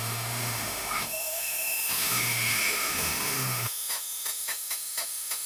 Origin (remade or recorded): remade